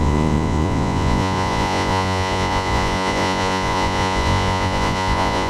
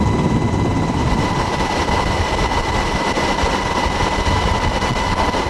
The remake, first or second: first